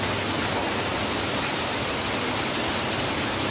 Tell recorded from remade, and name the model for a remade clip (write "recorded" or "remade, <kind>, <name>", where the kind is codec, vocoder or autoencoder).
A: recorded